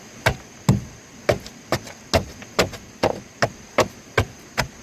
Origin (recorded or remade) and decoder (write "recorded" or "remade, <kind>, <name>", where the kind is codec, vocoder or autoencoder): recorded